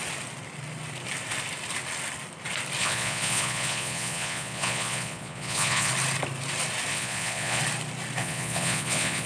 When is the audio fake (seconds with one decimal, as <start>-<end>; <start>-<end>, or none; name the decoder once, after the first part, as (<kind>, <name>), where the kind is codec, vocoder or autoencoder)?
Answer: 2.8-5.9 (vocoder, Vocos); 6.9-7.6; 8.2-9.3

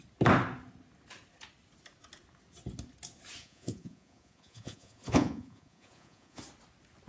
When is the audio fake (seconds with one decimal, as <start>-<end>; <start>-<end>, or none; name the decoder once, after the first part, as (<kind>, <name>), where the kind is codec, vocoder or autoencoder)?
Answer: 3.4-6.4 (vocoder, Vocos)